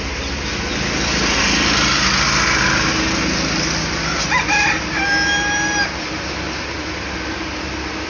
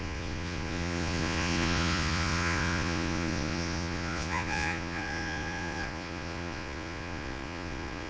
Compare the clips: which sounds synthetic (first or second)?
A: second